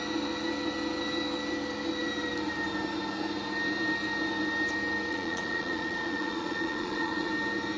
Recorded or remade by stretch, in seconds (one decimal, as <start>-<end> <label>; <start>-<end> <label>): 0.0-5.1 recorded; 5.1-7.3 remade; 7.3-7.8 recorded